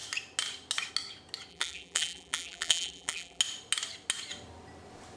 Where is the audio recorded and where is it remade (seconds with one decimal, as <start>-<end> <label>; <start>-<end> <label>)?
0.0-1.5 recorded; 1.5-3.4 remade; 3.4-5.2 recorded